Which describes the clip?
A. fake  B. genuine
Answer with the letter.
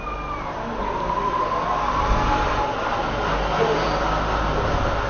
B